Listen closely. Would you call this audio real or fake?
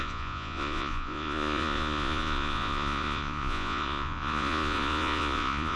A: fake